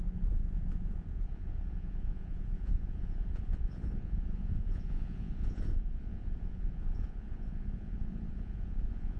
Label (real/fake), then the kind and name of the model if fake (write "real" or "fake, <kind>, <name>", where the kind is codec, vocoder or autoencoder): fake, vocoder, Vocos